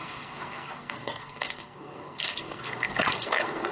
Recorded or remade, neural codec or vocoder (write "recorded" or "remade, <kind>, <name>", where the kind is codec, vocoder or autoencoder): remade, codec, SNAC